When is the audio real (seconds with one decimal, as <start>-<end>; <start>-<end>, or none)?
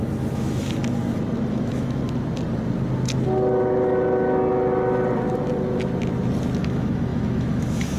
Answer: 0.8-1.5; 2.0-6.6